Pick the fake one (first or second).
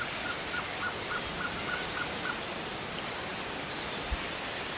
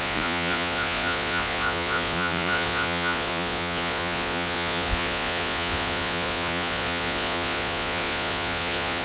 second